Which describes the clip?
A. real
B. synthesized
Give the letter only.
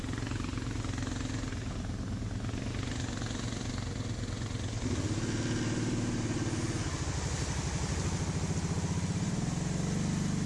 A